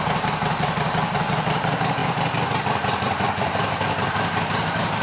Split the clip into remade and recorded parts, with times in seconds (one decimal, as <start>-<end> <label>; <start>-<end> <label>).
0.0-5.0 remade